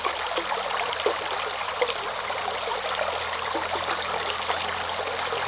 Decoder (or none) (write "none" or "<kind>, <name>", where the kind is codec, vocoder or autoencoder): none